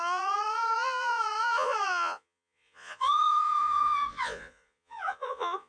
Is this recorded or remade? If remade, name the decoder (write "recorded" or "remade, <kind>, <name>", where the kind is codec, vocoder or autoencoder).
remade, vocoder, Vocos